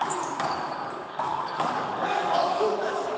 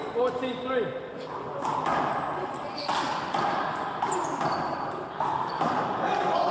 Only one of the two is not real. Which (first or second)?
first